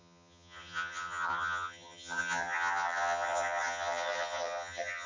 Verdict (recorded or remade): remade